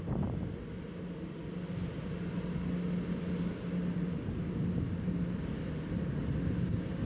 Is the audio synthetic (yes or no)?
no